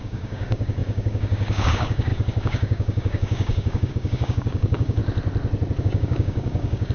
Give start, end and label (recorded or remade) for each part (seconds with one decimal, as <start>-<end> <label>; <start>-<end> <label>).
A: 0.0-5.0 remade; 5.0-5.8 recorded; 5.8-6.9 remade